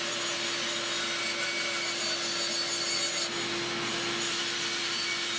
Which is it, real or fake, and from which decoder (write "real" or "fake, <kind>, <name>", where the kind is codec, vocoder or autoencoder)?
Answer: real